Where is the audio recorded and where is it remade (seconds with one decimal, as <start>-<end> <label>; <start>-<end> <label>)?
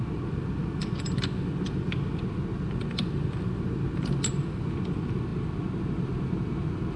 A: 0.0-7.0 recorded